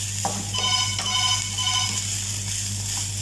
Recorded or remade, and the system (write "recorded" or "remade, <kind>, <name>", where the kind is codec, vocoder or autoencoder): recorded